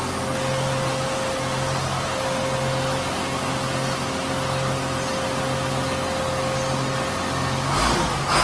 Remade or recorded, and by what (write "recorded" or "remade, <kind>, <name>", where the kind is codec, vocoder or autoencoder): recorded